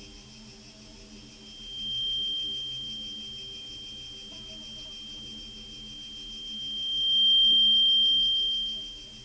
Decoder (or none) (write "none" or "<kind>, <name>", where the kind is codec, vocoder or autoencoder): none